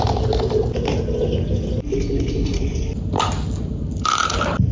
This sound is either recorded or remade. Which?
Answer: recorded